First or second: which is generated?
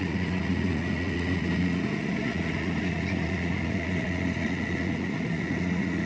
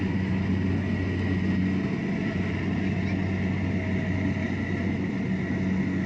first